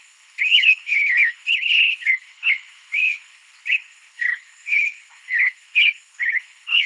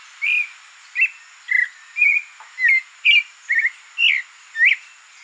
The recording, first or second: second